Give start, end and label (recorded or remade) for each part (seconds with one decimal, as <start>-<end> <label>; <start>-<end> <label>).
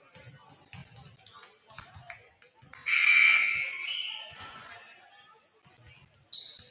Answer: 0.0-2.8 recorded; 2.8-4.7 remade; 4.7-6.7 recorded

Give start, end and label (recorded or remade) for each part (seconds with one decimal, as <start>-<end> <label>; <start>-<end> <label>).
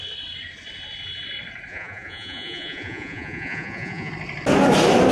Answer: 0.0-1.7 recorded; 1.7-4.1 remade; 4.1-5.1 recorded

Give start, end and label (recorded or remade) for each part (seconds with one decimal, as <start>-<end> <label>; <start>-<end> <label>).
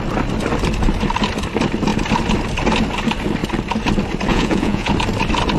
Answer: 0.0-4.3 recorded; 4.3-4.9 remade; 4.9-5.6 recorded